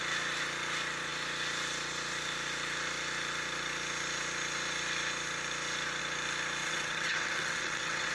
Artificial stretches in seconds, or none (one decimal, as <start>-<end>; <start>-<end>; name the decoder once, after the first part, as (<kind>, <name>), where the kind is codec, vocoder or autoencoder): 6.6-8.1 (vocoder, WaveNeXt)